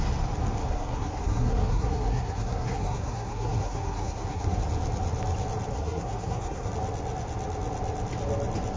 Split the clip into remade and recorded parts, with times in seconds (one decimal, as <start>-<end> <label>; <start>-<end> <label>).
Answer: 0.0-0.6 recorded; 0.6-4.6 remade; 4.6-5.7 recorded; 5.7-6.7 remade; 6.7-8.8 recorded